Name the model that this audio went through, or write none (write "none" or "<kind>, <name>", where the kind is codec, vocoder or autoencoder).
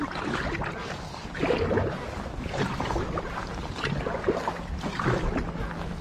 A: none